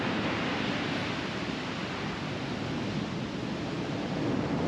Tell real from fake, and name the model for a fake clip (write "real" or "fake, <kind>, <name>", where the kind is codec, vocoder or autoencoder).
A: real